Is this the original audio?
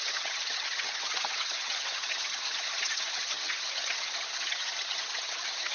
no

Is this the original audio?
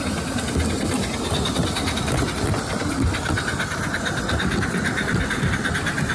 yes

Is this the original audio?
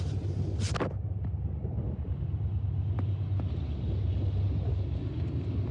yes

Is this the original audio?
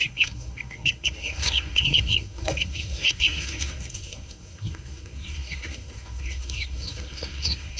no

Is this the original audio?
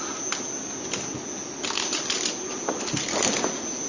yes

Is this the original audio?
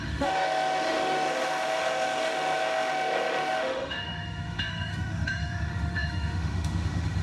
no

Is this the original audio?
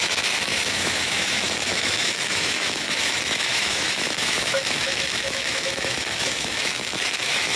no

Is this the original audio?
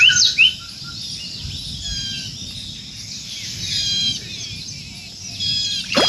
yes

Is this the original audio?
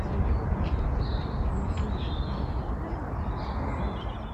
yes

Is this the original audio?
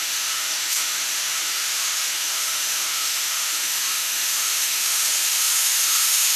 no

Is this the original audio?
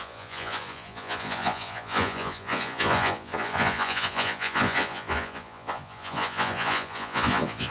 no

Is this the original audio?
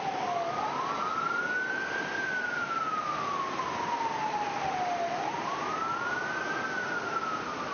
yes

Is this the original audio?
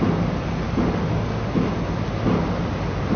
yes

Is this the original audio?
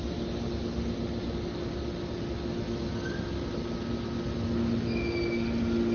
yes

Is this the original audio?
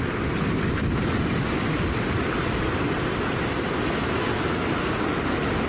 yes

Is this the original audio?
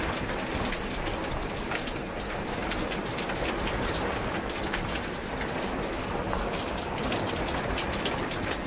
no